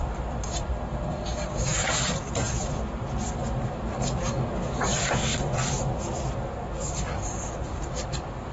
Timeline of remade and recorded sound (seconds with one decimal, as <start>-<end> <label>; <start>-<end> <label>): 0.0-8.5 remade